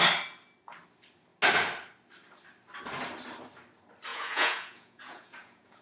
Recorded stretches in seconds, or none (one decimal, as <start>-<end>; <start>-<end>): 0.0-4.1